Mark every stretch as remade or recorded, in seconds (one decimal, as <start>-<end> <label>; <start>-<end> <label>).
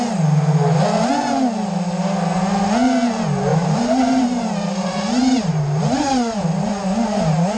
0.0-3.5 recorded; 3.5-7.6 remade